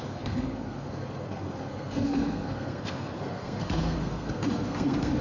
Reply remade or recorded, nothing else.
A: remade